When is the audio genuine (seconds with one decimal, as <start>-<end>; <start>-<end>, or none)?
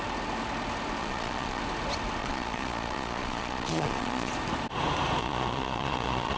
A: 0.0-1.0; 1.6-2.2; 4.3-5.2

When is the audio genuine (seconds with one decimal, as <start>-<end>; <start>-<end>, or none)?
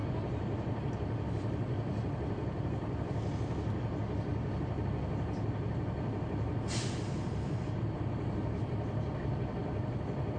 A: 0.0-10.4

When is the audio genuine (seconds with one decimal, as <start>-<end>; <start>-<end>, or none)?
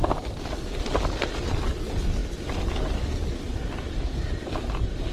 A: 0.0-5.1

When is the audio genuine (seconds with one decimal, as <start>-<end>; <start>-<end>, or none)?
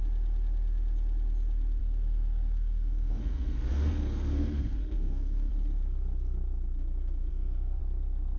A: 0.0-1.8; 5.5-7.3; 7.8-8.4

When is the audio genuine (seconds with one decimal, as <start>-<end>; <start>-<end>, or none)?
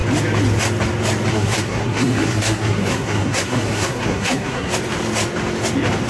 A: 0.0-1.3; 4.7-6.1